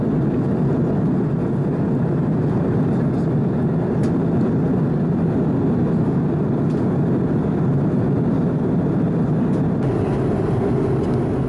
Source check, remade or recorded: recorded